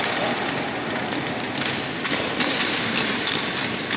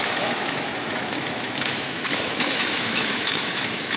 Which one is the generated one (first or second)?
second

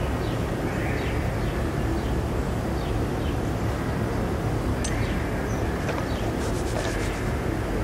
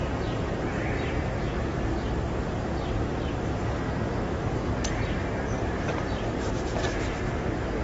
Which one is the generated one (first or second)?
second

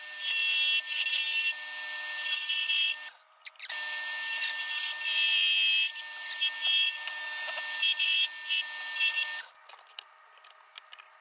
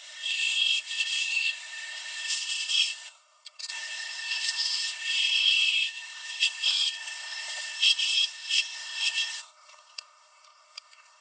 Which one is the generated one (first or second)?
second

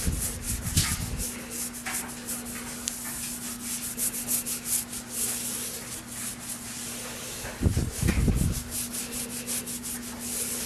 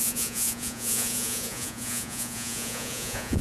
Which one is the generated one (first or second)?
second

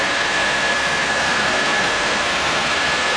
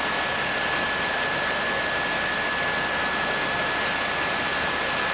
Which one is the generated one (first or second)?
first